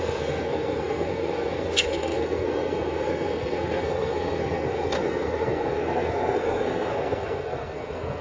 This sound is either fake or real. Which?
fake